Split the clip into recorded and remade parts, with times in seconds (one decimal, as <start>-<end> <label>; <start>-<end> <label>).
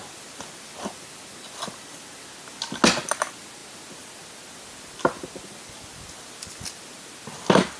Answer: 0.0-7.8 recorded